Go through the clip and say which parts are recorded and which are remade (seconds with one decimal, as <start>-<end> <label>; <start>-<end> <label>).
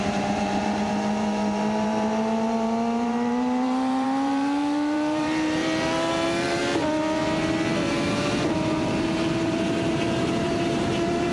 0.0-6.6 remade; 6.6-7.9 recorded; 7.9-11.3 remade